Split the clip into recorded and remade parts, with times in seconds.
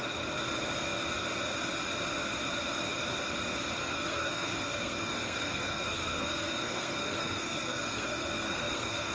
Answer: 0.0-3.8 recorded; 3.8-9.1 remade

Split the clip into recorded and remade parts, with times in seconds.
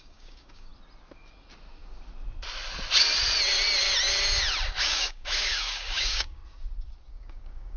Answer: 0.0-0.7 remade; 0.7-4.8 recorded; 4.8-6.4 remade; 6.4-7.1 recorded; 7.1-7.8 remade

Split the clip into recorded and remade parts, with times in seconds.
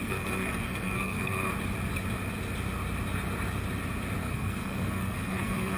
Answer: 0.0-1.5 remade; 1.5-4.2 recorded; 4.2-5.8 remade